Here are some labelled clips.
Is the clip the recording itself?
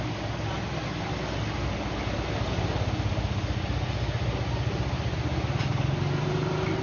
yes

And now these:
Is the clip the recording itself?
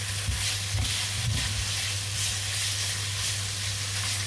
yes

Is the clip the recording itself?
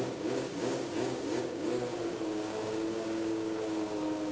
no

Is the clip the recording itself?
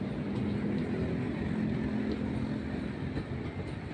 yes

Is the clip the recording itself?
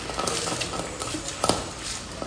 yes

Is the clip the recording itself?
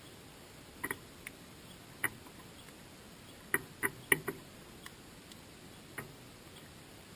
yes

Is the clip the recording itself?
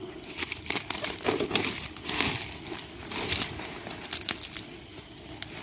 yes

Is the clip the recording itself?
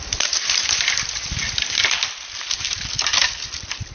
yes